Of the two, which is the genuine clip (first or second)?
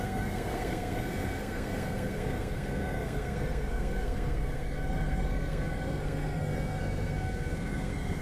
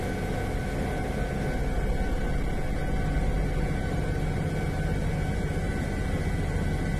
second